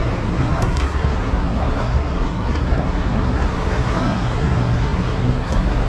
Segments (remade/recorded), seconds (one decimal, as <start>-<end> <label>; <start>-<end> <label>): 0.0-5.9 remade